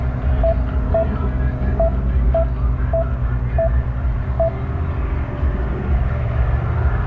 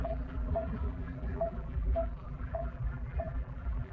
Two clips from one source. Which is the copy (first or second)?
second